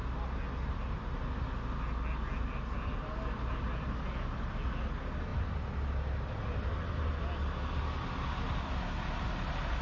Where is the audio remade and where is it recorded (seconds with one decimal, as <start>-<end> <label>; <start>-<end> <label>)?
0.0-9.8 recorded